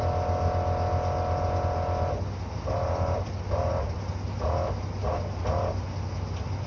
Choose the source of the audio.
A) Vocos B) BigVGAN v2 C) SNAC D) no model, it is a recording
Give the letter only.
D